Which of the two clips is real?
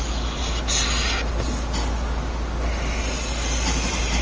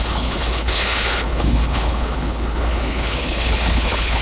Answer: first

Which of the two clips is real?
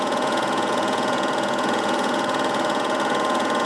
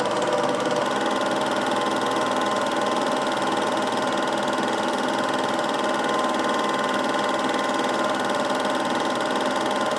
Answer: second